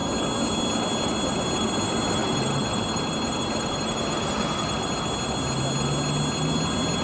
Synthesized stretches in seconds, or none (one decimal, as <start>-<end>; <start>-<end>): 2.2-5.1